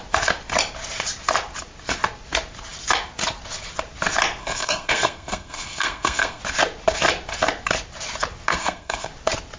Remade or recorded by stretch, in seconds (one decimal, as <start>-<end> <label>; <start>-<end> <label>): 0.0-4.4 recorded; 4.4-6.4 remade; 6.4-8.5 recorded; 8.5-9.1 remade; 9.1-9.6 recorded